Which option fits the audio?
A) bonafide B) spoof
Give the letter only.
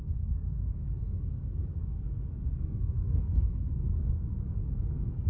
B